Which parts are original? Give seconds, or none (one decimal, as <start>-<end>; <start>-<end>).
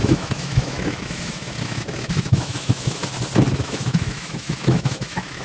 3.0-3.6